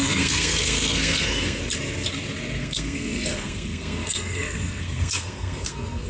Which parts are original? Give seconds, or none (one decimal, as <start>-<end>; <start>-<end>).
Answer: 1.6-2.6